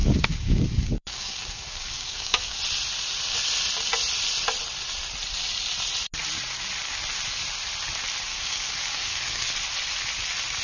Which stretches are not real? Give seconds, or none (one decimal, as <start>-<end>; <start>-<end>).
0.0-2.6; 8.3-9.5